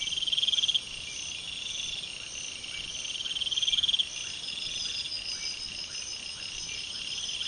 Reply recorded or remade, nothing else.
recorded